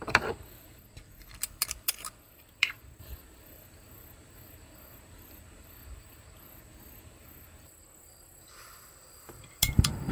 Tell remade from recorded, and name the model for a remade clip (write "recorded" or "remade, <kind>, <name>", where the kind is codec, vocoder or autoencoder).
remade, vocoder, BigVGAN v2